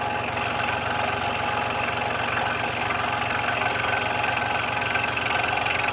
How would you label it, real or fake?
real